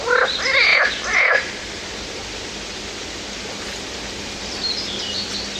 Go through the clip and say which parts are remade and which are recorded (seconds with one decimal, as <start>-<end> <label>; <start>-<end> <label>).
0.0-5.6 recorded